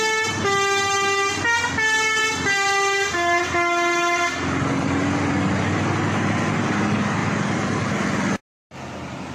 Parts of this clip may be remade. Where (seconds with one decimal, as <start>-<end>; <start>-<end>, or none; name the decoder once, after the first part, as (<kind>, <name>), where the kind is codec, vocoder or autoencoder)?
7.2-7.9 (vocoder, BigVGAN v2)